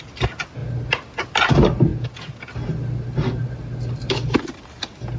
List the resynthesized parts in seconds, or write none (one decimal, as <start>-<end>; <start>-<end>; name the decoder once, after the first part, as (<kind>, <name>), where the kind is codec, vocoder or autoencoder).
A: 1.9-2.5 (vocoder, Vocos)